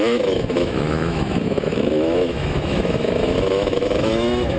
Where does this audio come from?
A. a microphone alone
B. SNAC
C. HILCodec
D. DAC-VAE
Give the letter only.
D